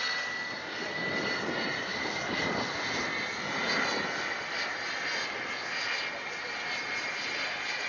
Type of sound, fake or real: real